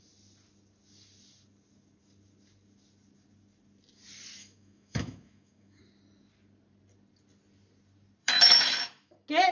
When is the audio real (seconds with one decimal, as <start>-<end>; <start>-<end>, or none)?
0.0-4.4; 5.8-8.2; 9.1-9.5